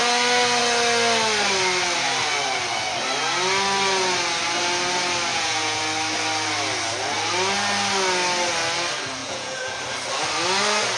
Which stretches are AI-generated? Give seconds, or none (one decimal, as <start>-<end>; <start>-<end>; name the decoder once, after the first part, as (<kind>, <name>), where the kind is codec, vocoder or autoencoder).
5.3-5.8 (vocoder, Vocos); 9.2-9.8